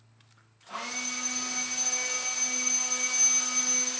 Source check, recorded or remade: recorded